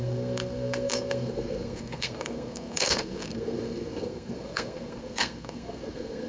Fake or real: fake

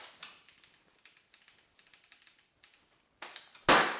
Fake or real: real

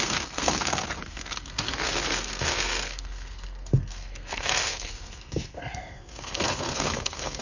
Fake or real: fake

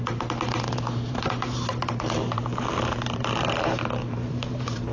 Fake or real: fake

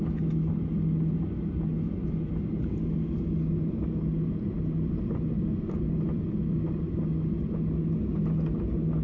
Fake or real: real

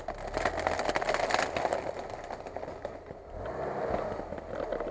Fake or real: real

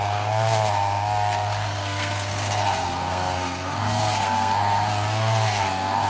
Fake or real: fake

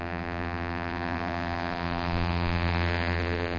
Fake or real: fake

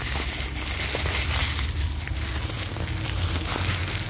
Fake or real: real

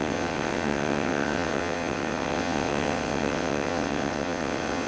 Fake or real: fake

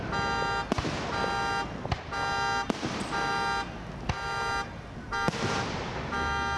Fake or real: real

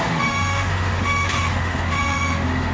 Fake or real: fake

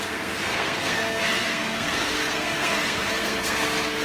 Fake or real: fake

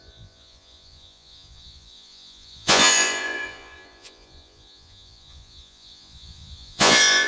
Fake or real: fake